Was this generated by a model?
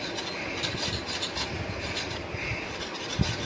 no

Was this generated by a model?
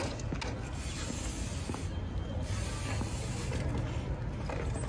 no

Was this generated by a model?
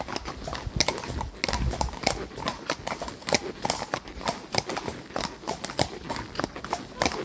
no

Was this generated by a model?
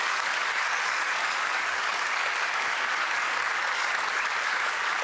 yes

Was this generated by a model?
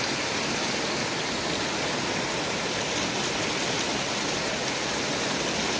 no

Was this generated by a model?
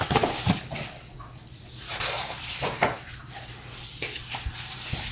no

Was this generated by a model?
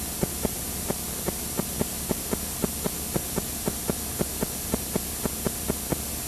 no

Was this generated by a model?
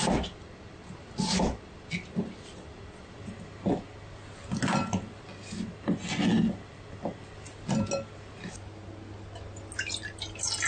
no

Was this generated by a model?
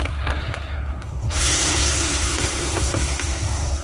yes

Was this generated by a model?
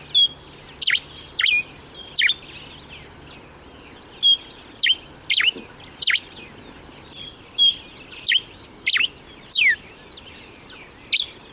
no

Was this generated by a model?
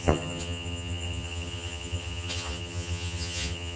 yes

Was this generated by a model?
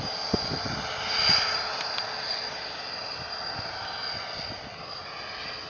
no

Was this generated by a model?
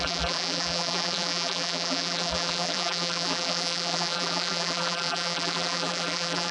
yes